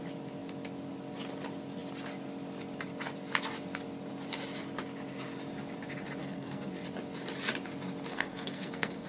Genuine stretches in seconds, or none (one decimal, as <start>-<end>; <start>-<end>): 0.0-6.2; 6.7-8.1